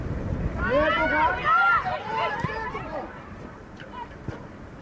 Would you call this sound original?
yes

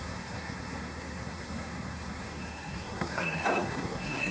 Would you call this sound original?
no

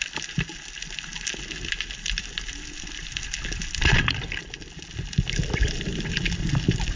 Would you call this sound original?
yes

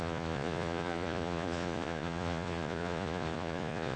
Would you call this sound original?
no